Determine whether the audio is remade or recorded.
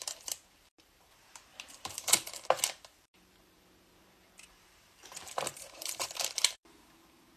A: remade